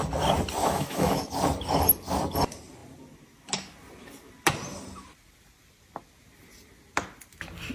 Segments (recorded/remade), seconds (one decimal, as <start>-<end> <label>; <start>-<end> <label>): 0.0-0.6 recorded; 0.6-1.2 remade; 1.2-7.7 recorded